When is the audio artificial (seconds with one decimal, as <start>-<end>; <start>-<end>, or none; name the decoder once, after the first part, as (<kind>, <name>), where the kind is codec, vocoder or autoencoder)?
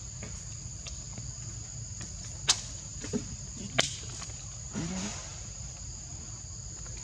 2.9-4.0 (vocoder, BigVGAN v2); 5.3-6.0